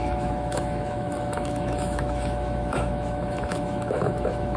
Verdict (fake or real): fake